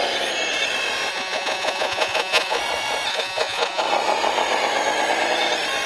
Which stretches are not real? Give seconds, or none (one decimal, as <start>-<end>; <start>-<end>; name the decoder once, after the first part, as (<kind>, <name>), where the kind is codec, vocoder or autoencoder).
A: 1.1-2.6 (vocoder, Vocos); 3.1-3.8